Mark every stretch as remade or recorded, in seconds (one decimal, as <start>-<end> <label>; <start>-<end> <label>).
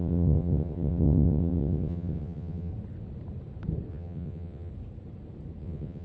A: 0.0-2.7 remade; 2.7-3.9 recorded; 3.9-4.7 remade; 4.7-5.6 recorded; 5.6-6.0 remade